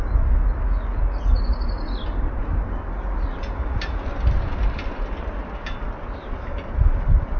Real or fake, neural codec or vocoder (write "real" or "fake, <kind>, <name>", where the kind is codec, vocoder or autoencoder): real